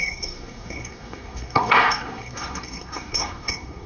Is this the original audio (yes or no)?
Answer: no